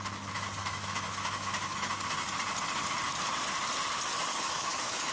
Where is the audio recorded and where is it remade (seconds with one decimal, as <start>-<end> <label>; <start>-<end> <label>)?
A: 0.0-0.6 recorded; 0.6-1.9 remade; 1.9-4.3 recorded; 4.3-5.1 remade